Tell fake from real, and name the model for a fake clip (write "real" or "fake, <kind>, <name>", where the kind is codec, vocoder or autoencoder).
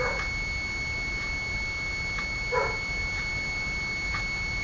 real